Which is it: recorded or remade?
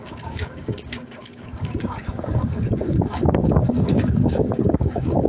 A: remade